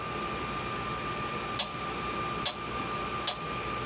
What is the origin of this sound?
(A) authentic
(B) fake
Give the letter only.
A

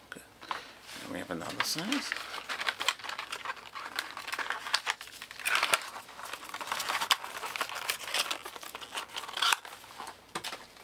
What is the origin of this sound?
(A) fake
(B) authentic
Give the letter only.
B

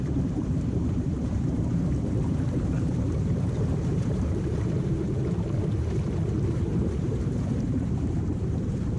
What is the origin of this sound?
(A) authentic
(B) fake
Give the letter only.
B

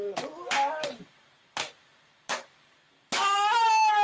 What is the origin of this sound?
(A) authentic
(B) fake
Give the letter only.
B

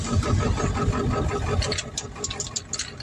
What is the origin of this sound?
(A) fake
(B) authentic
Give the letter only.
B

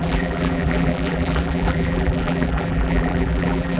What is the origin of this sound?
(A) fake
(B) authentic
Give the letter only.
A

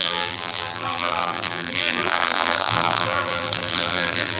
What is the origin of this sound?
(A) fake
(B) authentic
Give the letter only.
A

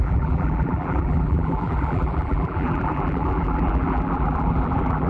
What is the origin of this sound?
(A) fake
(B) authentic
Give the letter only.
A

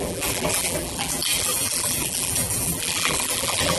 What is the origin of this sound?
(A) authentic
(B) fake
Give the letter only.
B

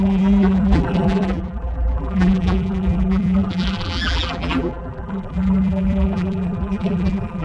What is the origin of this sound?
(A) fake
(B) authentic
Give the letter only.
A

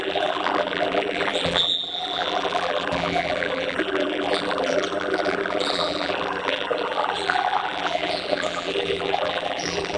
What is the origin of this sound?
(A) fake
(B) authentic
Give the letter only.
A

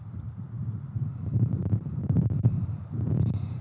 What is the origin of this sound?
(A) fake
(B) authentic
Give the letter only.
A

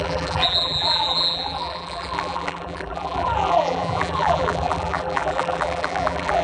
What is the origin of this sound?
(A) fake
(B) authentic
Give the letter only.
A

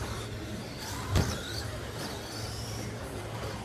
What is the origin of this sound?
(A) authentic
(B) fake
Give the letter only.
B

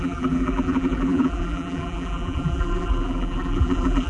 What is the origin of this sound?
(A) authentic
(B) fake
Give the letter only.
B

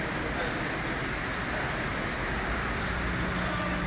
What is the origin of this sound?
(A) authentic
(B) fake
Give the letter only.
A